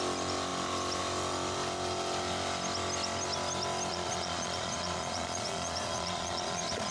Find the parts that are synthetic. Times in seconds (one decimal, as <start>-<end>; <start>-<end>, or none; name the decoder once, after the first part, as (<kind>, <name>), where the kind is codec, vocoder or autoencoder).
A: 3.9-6.9 (vocoder, Vocos)